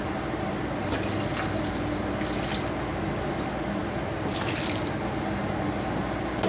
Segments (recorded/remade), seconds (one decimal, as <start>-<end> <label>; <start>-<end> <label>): 0.0-6.5 recorded